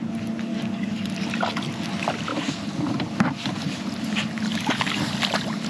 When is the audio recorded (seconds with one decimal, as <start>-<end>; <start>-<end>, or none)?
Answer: 0.0-0.5; 1.1-4.5; 5.0-5.7